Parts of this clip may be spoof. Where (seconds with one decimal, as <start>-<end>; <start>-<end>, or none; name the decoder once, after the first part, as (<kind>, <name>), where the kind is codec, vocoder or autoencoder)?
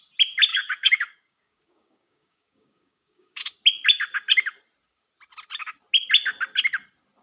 0.5-3.5 (codec, DAC)